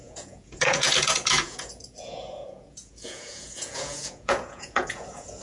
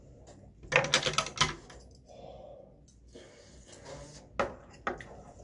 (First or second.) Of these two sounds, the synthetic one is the first